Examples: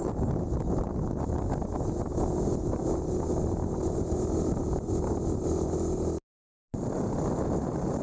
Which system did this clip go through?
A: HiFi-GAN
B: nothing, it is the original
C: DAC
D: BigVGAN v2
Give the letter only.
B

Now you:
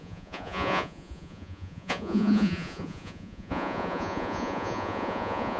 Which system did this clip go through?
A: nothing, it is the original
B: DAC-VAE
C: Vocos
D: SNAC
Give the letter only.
C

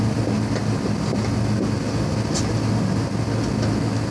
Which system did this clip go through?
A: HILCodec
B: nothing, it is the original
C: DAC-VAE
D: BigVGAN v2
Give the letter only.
B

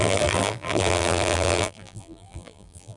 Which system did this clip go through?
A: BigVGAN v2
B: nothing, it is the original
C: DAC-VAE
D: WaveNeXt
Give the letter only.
A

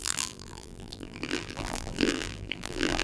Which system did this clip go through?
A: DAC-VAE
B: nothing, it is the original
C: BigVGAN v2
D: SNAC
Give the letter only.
C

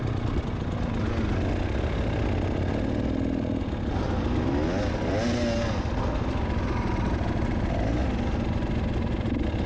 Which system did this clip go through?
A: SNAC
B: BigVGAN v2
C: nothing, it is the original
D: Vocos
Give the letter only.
C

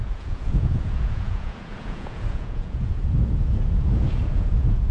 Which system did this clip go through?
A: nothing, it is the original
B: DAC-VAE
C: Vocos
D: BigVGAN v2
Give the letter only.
C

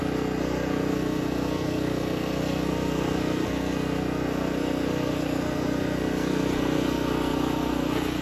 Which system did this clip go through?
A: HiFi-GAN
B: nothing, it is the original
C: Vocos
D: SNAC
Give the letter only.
D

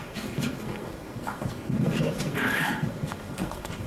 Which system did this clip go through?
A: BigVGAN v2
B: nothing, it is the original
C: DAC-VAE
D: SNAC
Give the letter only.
D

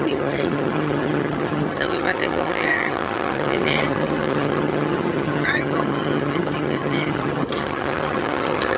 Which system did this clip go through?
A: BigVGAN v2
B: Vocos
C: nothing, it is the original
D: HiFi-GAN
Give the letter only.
D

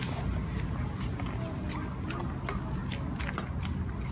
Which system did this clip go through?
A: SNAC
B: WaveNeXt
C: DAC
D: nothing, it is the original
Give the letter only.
D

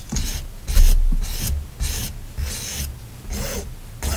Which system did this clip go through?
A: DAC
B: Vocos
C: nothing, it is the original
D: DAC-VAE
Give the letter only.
C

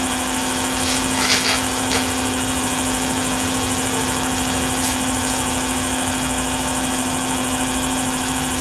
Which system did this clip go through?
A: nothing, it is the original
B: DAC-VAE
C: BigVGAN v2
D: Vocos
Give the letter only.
B